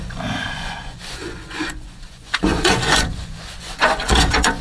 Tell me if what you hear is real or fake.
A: fake